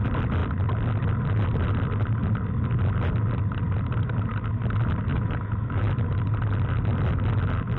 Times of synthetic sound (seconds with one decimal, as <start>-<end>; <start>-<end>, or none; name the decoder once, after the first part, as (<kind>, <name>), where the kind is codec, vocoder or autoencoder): 5.1-6.2 (autoencoder, DAC-VAE)